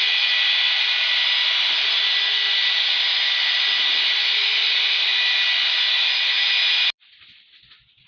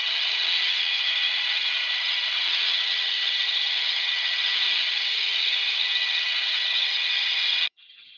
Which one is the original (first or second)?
first